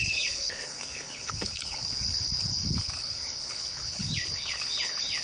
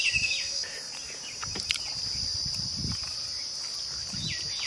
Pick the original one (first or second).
second